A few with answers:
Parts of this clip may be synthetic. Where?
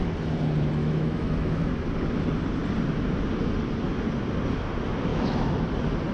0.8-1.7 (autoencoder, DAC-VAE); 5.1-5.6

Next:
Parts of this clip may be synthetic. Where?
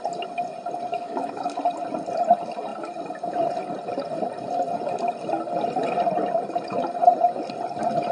0.9-1.6 (autoencoder, DAC-VAE)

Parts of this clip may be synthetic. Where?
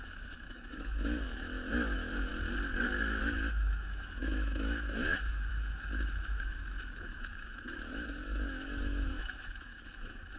0.0-2.3 (autoencoder, DAC-VAE); 3.2-10.4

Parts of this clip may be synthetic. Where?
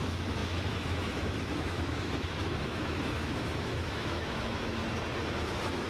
0.0-4.8 (autoencoder, DAC-VAE); 5.4-5.9